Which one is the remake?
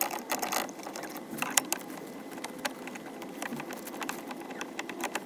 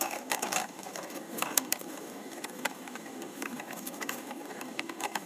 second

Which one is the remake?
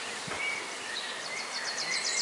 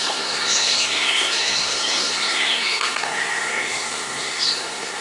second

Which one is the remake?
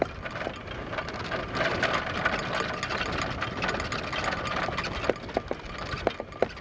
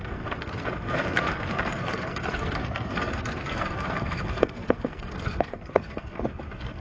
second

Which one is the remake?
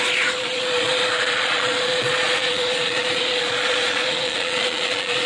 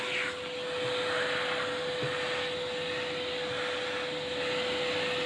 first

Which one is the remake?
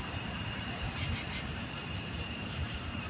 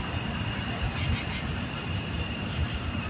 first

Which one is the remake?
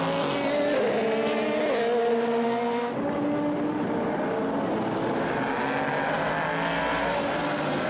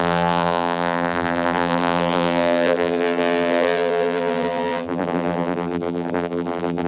second